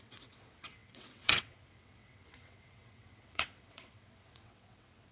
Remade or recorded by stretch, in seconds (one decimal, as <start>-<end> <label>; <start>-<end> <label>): 0.0-5.1 remade